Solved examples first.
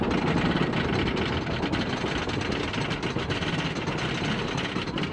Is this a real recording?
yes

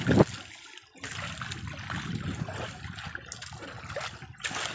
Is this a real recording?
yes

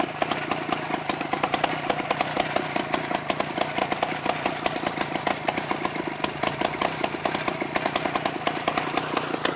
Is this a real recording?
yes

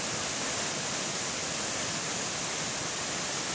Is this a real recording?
yes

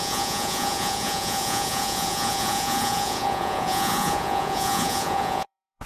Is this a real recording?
no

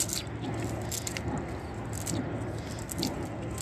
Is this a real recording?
yes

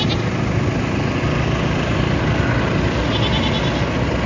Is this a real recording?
yes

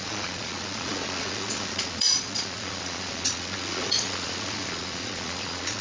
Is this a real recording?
no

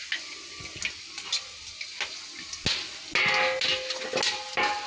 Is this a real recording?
yes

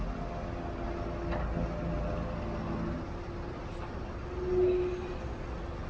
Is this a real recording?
yes